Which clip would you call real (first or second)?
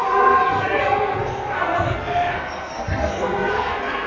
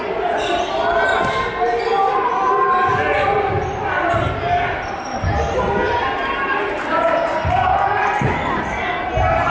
second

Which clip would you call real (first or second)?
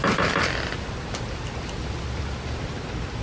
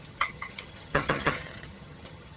first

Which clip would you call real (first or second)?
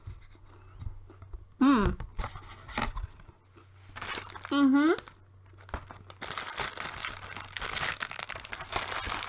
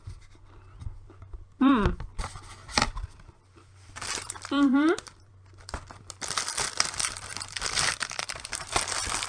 first